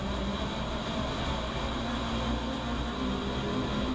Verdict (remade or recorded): recorded